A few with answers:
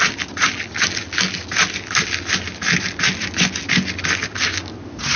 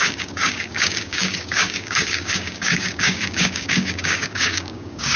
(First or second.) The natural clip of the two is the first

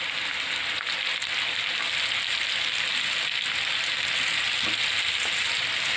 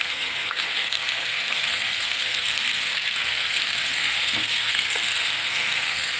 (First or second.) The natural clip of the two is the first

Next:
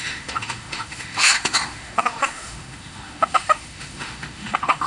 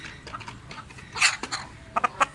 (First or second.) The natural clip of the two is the second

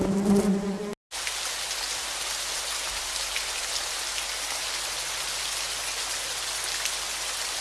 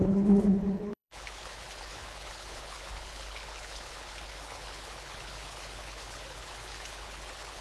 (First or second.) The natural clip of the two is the first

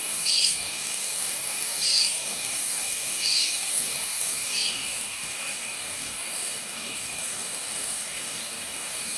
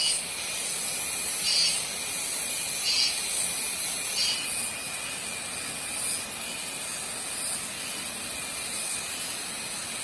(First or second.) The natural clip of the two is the second